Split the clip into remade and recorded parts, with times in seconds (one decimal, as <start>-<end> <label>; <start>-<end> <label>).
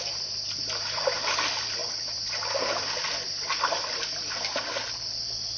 0.0-5.6 recorded